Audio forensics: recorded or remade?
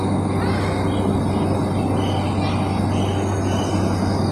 recorded